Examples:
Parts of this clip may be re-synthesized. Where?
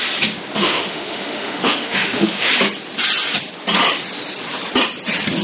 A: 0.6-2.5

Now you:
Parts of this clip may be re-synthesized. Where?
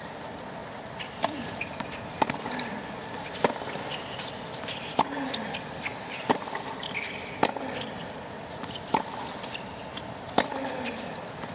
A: none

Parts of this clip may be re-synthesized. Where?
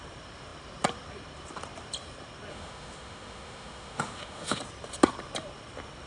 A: 2.5-4.6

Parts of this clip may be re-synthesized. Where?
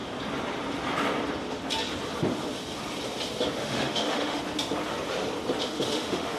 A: 3.6-4.4; 5.6-6.4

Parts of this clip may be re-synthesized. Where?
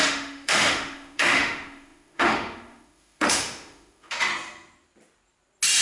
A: 0.0-4.3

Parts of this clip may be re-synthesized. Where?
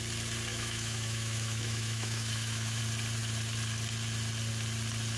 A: 0.5-2.8